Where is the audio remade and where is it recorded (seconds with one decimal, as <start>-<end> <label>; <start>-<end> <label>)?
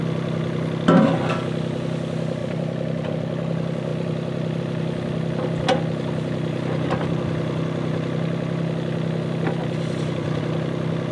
0.0-2.4 recorded; 2.4-3.1 remade; 3.1-3.9 recorded; 3.9-4.6 remade; 4.6-9.6 recorded; 9.6-10.4 remade; 10.4-11.1 recorded